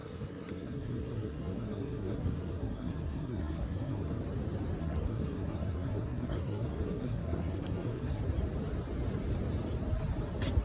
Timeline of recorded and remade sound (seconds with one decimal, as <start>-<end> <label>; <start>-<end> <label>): 0.0-4.2 remade; 4.2-4.8 recorded; 4.8-8.2 remade; 8.2-10.6 recorded